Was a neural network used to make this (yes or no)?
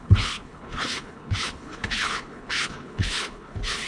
yes